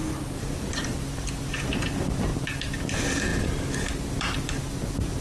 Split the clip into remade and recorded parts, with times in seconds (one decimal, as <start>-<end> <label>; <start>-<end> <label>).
0.0-5.2 recorded